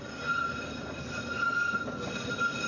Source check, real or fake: real